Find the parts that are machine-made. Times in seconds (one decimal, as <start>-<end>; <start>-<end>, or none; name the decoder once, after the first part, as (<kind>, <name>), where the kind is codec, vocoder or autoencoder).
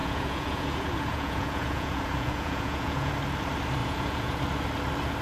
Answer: 0.0-3.1 (vocoder, Vocos); 3.8-4.4